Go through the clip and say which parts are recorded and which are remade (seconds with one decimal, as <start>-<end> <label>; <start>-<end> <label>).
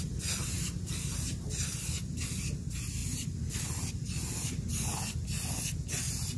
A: 0.0-0.4 recorded; 0.4-1.4 remade; 1.4-6.4 recorded